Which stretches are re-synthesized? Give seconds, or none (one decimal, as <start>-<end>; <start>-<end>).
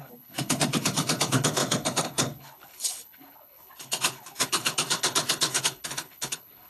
0.0-6.7